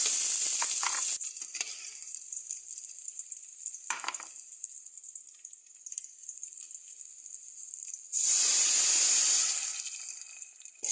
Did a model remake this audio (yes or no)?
no